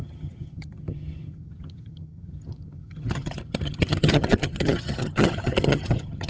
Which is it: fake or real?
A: fake